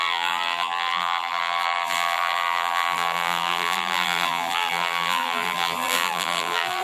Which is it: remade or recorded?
remade